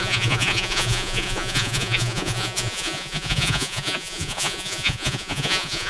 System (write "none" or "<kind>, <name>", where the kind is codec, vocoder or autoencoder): vocoder, Vocos